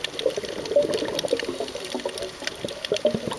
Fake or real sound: real